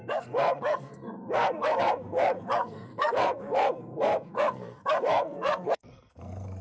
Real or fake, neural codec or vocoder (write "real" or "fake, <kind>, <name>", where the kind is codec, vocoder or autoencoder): fake, codec, SNAC